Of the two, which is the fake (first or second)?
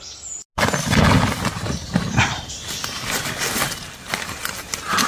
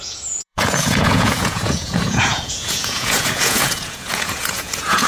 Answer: second